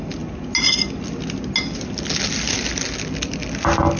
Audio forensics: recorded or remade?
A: recorded